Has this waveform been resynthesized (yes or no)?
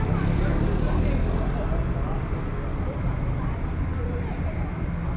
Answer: no